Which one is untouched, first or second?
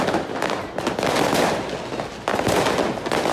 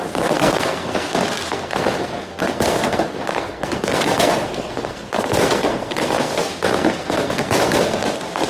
first